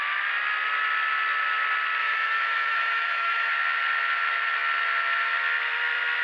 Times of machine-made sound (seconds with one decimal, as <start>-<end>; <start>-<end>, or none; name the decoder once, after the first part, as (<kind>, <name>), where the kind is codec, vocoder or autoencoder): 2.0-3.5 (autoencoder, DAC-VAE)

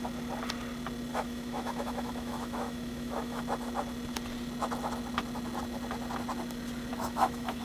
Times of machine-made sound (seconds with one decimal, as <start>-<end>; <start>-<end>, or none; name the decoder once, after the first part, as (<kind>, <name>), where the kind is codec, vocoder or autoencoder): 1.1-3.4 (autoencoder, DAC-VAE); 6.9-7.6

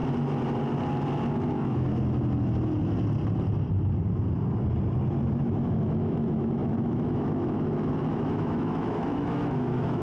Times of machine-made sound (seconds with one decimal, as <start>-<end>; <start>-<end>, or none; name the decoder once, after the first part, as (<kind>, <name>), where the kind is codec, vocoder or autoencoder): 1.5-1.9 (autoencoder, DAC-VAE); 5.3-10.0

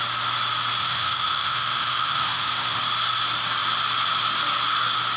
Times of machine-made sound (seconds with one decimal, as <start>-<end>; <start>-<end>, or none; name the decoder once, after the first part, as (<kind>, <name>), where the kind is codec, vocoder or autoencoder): 0.8-2.8 (autoencoder, DAC-VAE)